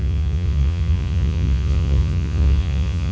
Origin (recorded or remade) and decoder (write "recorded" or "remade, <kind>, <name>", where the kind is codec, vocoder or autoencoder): remade, vocoder, Vocos